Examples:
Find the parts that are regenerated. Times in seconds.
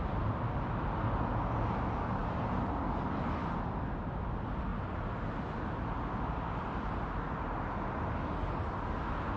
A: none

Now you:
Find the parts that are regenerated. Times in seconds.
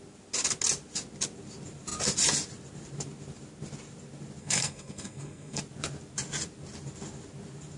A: 4.4-5.6 (codec, SNAC)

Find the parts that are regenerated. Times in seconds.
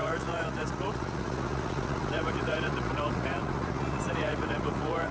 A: 0.0-5.1 (vocoder, Vocos)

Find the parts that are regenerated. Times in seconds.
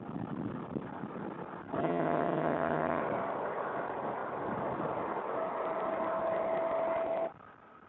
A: 1.8-3.0 (vocoder, HiFi-GAN)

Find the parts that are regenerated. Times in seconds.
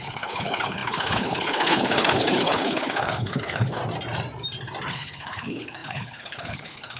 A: 0.0-3.8 (codec, HILCodec); 4.9-7.0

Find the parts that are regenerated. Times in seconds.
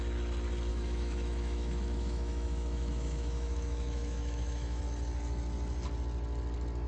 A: 0.7-4.8 (autoencoder, DAC-VAE)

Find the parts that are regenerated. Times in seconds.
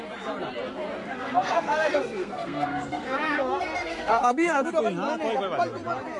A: 1.0-4.7 (codec, SNAC)